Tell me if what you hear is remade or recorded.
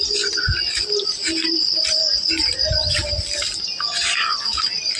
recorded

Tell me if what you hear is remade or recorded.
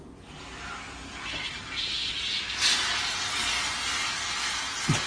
recorded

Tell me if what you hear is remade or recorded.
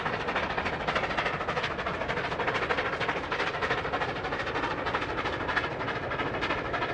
recorded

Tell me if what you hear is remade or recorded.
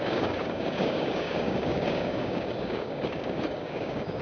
remade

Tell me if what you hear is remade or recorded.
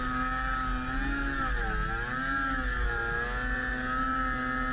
recorded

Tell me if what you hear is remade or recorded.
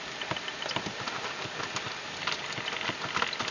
recorded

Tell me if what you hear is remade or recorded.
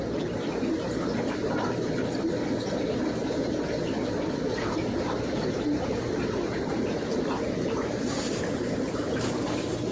remade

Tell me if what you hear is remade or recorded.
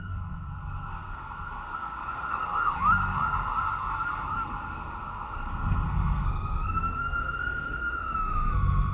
remade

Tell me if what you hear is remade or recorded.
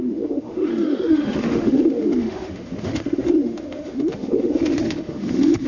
remade